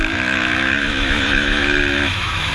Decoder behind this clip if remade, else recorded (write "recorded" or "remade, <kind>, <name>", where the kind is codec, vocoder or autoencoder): remade, autoencoder, DAC-VAE